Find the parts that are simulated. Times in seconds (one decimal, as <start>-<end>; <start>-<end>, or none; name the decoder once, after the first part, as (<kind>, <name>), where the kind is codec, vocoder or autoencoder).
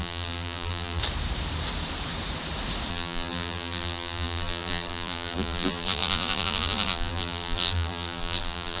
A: 0.0-1.0 (vocoder, BigVGAN v2); 2.9-8.8